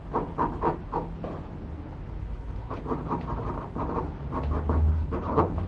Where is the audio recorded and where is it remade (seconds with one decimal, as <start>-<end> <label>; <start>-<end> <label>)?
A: 0.0-2.2 recorded; 2.2-2.8 remade; 2.8-4.9 recorded; 4.9-5.7 remade